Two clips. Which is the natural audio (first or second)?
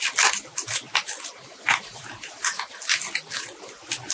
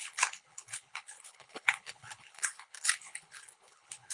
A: first